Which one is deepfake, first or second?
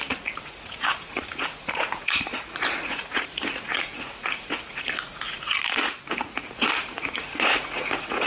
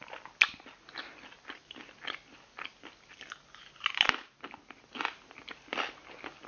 first